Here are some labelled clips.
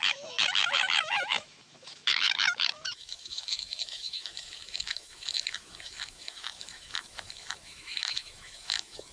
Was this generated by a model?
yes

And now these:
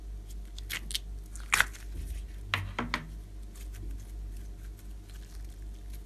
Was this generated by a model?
no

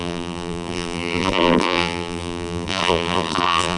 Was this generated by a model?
yes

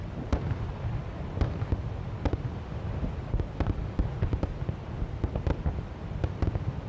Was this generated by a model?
no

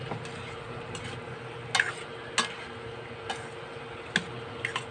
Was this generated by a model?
no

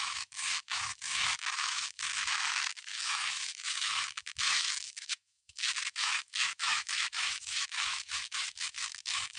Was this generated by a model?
yes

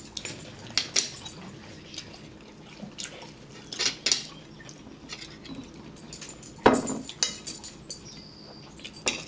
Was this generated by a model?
no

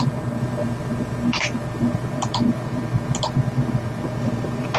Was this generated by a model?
yes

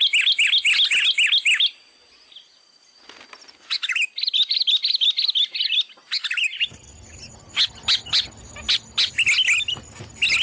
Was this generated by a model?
no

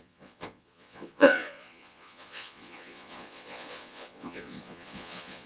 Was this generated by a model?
yes